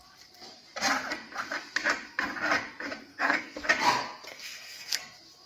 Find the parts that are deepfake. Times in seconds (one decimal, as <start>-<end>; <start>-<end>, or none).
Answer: 3.1-3.7; 4.3-5.0